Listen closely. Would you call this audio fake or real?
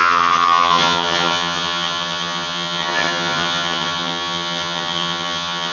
fake